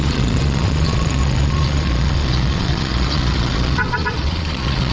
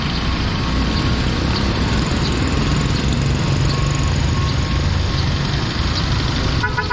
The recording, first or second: second